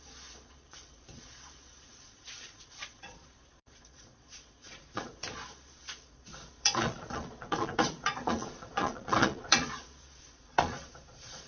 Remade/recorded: remade